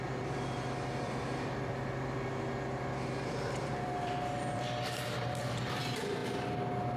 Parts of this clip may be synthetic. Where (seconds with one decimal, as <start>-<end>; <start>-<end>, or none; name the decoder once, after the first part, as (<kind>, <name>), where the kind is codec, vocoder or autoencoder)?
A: 0.0-1.7 (vocoder, BigVGAN v2); 3.2-6.2